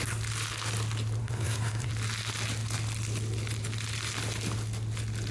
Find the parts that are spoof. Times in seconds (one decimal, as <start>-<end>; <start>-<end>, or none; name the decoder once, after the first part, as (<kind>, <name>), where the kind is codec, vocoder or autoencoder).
1.2-1.9 (codec, SNAC)